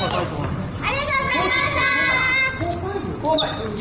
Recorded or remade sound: recorded